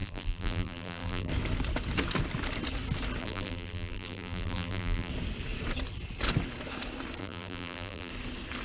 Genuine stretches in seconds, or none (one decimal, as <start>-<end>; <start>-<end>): 1.3-3.2; 5.1-7.2; 8.1-8.6